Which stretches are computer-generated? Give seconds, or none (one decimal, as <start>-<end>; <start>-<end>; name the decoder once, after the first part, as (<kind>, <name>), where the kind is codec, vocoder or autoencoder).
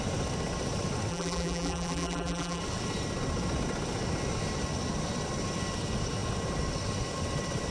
1.1-2.6 (vocoder, BigVGAN v2)